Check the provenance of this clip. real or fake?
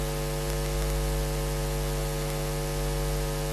real